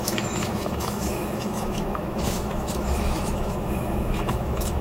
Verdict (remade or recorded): remade